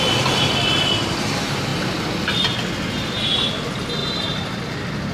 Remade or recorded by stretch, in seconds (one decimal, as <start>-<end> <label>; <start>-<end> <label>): 0.0-4.0 recorded; 4.0-4.6 remade; 4.6-5.1 recorded